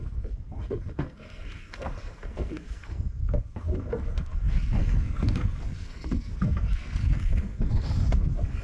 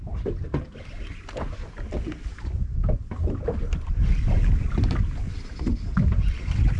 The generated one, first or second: first